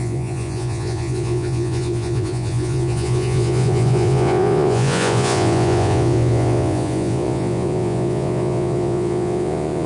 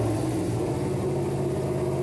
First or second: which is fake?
first